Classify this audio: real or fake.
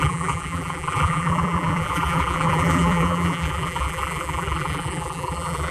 fake